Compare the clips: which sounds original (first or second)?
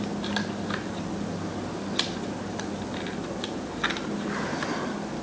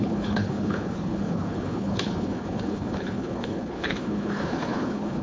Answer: first